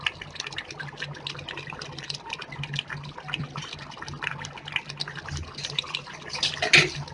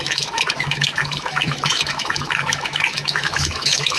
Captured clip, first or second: first